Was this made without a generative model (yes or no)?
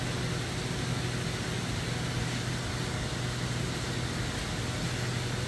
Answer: yes